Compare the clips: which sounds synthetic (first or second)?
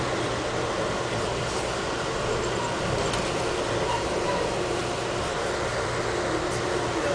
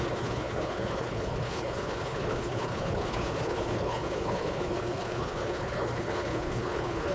second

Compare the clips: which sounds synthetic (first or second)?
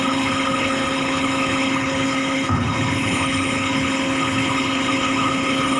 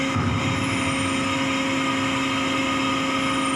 first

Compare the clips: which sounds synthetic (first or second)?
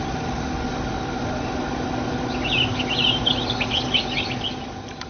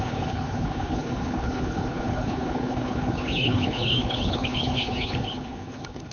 second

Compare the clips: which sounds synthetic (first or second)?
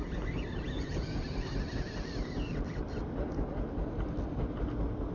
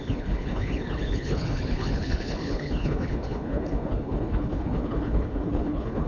second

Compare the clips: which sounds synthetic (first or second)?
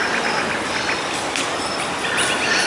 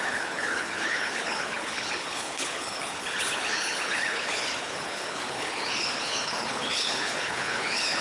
second